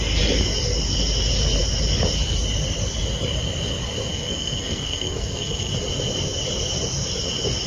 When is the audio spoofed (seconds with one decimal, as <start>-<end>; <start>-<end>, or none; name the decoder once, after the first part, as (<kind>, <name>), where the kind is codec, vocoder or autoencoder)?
4.1-5.7 (codec, SNAC)